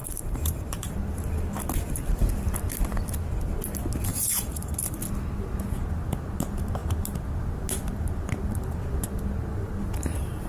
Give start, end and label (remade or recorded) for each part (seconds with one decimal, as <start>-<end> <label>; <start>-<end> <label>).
0.0-0.9 remade; 0.9-4.1 recorded; 4.1-5.0 remade; 5.0-10.5 recorded